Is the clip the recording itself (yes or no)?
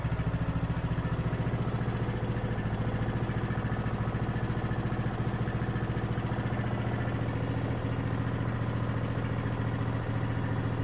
yes